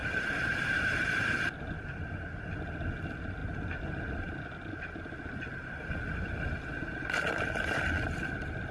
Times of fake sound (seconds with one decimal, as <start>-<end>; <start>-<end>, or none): 0.0-1.4